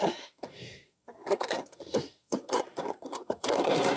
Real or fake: fake